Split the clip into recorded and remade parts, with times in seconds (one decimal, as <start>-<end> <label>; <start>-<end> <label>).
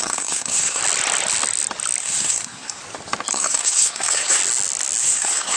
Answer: 0.0-0.8 remade; 0.8-2.0 recorded; 2.0-2.8 remade; 2.8-3.3 recorded; 3.3-4.4 remade; 4.4-5.0 recorded; 5.0-5.6 remade